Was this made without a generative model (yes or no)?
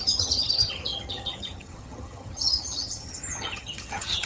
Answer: no